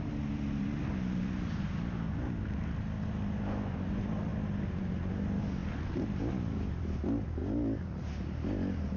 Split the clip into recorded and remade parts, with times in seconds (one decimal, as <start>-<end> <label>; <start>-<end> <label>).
0.0-9.0 recorded

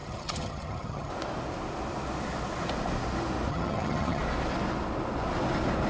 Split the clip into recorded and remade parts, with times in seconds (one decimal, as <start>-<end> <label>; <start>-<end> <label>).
0.0-1.1 remade; 1.1-3.5 recorded; 3.5-4.2 remade; 4.2-5.9 recorded

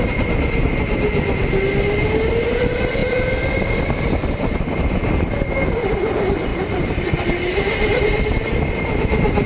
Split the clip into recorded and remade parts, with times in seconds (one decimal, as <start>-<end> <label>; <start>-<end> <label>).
0.0-3.0 recorded; 3.0-5.2 remade; 5.2-6.5 recorded; 6.5-7.1 remade; 7.1-8.3 recorded; 8.3-9.5 remade